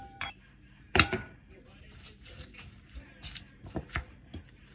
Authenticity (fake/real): fake